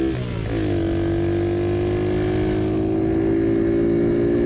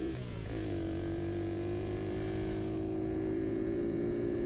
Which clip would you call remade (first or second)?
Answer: second